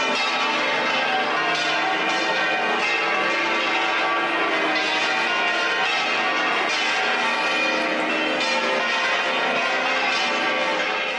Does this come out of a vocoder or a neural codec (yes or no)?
no